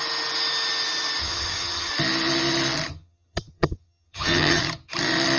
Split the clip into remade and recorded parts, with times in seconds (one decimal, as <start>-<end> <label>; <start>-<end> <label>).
0.0-1.2 recorded; 1.2-1.9 remade; 1.9-2.9 recorded; 2.9-4.6 remade; 4.6-5.4 recorded